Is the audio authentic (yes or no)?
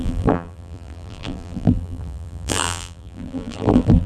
no